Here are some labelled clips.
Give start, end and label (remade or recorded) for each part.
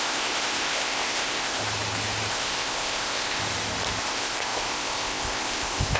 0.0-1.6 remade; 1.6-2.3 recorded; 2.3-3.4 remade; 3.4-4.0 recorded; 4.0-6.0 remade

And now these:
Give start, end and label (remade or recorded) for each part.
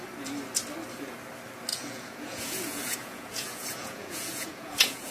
0.0-1.7 recorded; 1.7-5.1 remade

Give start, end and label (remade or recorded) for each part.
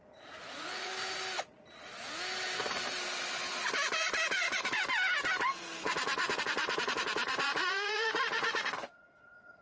0.0-0.9 remade; 0.9-5.9 recorded; 5.9-9.6 remade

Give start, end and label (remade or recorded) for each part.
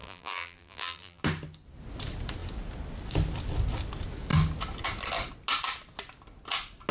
0.0-1.2 remade; 1.2-6.9 recorded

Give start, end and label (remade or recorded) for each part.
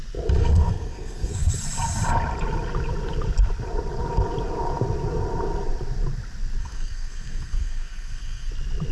0.0-0.4 recorded; 0.4-1.5 remade; 1.5-6.6 recorded; 6.6-8.5 remade; 8.5-8.9 recorded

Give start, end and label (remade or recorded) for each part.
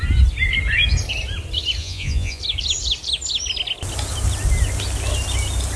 0.0-1.8 recorded; 1.8-2.4 remade; 2.4-5.8 recorded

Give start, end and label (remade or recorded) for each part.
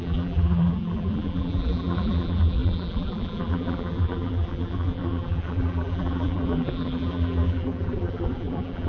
0.0-8.9 remade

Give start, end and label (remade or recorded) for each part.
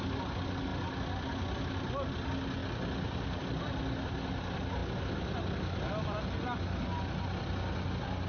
0.0-8.3 recorded